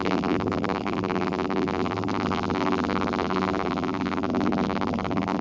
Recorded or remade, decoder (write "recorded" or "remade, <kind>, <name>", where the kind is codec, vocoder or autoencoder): remade, vocoder, BigVGAN v2